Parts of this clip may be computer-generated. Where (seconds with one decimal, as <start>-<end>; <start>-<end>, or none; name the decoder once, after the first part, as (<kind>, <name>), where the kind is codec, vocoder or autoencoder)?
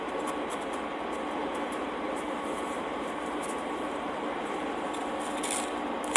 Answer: 1.4-4.7 (vocoder, BigVGAN v2)